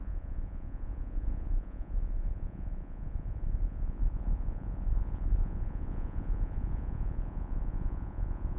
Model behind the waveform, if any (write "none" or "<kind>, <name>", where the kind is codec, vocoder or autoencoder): vocoder, Vocos